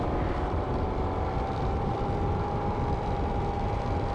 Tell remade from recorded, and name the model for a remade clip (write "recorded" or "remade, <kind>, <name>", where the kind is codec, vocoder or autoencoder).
remade, vocoder, BigVGAN v2